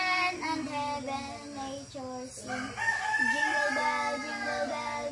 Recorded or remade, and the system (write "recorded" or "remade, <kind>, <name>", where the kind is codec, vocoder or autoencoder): recorded